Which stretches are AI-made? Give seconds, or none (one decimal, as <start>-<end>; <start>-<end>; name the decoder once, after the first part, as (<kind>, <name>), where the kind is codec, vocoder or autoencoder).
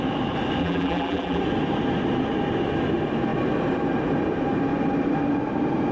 0.6-1.4 (vocoder, BigVGAN v2)